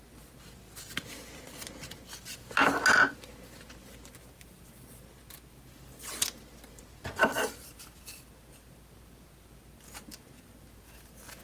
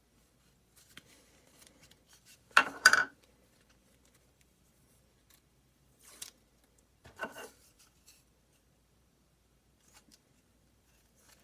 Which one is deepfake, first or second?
second